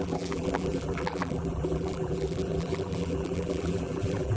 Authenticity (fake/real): fake